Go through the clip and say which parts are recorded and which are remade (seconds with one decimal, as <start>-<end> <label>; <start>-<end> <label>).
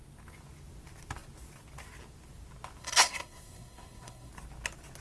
0.0-2.8 recorded; 2.8-4.3 remade; 4.3-5.0 recorded